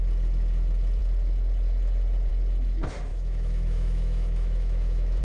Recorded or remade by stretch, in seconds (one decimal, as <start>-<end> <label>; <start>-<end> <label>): 0.0-3.1 recorded; 3.1-5.2 remade